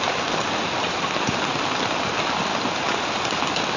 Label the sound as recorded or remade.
recorded